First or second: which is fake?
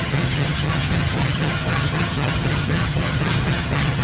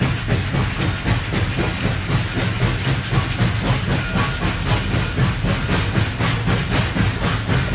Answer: first